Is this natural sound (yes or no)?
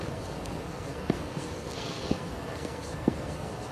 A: no